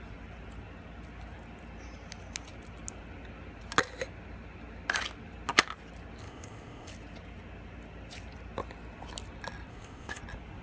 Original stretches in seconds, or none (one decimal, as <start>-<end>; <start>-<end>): 0.0-6.2; 6.9-9.7; 10.2-10.6